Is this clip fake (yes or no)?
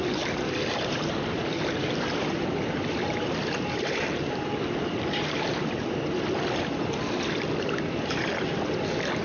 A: no